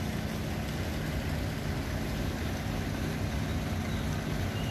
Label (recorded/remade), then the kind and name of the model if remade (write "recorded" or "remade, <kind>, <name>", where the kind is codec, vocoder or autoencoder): recorded